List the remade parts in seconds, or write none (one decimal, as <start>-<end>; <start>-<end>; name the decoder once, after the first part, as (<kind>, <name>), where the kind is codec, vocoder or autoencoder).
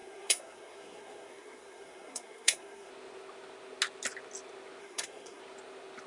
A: 0.0-2.9 (codec, SNAC); 4.8-5.4